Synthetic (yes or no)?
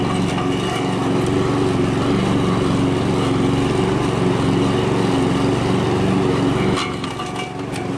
no